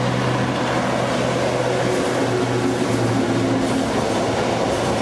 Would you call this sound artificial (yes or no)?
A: no